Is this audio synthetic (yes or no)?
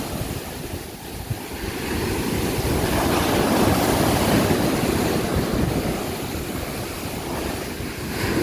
no